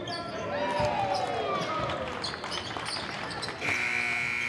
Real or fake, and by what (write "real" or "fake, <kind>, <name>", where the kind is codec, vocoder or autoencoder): real